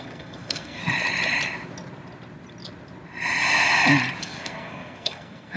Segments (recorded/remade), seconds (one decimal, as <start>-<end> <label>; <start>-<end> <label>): 0.0-0.8 remade; 0.8-4.2 recorded; 4.2-5.6 remade